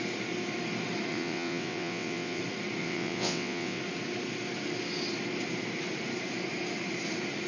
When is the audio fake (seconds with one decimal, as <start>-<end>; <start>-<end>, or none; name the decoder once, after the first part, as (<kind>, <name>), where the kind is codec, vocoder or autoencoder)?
1.1-2.4 (vocoder, WaveNeXt); 2.8-3.8